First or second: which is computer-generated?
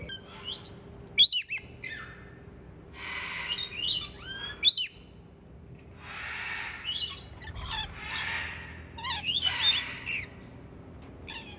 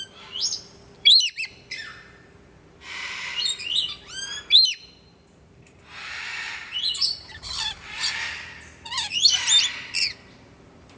second